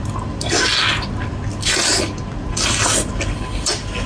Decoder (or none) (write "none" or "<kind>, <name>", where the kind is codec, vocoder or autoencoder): none